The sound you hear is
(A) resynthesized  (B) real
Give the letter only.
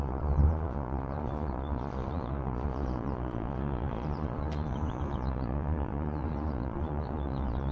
A